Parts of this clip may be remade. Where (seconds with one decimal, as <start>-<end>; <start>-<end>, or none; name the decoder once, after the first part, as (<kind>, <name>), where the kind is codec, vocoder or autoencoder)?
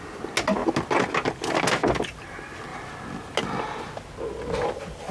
none